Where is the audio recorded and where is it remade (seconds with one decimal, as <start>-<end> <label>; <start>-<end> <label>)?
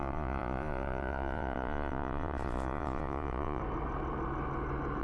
0.0-3.6 remade; 3.6-5.0 recorded